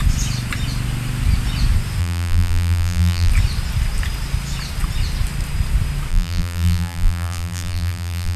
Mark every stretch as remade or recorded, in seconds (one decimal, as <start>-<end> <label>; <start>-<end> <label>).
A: 0.0-2.0 recorded; 2.0-3.3 remade; 3.3-6.1 recorded; 6.1-8.4 remade